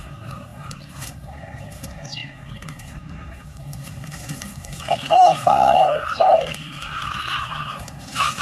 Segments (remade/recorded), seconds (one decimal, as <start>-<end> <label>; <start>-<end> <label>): 0.0-8.4 remade